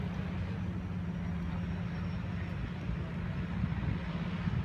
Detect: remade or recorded recorded